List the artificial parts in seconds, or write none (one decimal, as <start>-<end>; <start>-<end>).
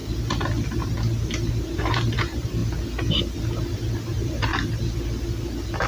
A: 1.5-2.6; 4.1-4.5